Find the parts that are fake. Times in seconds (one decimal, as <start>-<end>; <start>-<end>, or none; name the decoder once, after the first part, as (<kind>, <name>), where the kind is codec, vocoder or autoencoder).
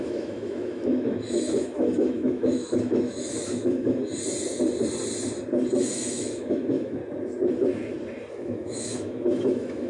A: 0.0-4.0 (autoencoder, DAC-VAE); 5.9-7.0; 8.3-9.9